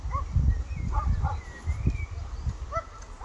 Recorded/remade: recorded